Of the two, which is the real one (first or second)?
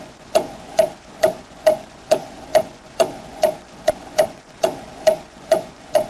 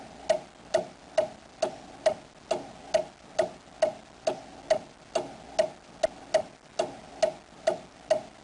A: second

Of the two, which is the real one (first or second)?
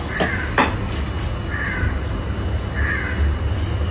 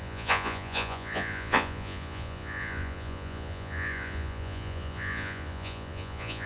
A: first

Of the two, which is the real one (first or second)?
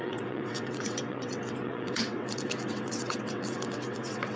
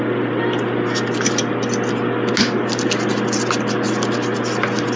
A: second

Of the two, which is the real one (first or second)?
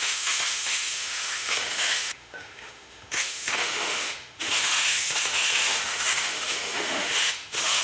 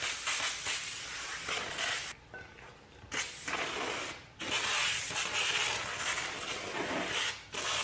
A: second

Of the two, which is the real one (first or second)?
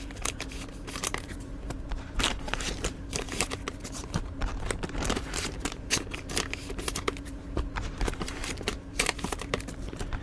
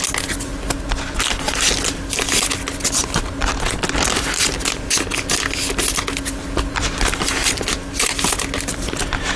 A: second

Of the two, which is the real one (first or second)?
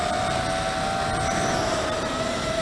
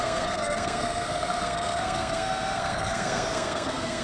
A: first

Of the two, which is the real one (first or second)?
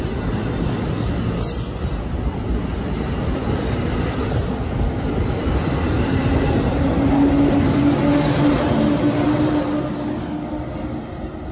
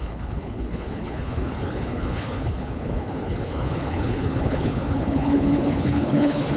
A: first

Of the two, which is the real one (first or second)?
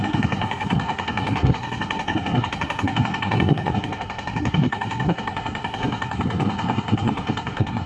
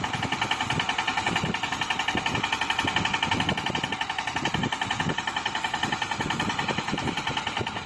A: second